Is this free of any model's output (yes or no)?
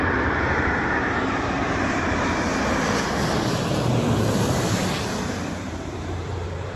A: no